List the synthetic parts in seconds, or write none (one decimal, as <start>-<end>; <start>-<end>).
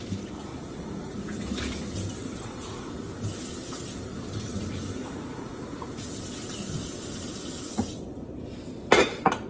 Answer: 0.5-1.2; 2.2-2.9; 4.1-6.1